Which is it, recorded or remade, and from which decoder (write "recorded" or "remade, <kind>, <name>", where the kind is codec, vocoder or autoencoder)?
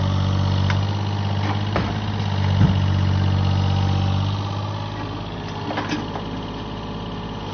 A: recorded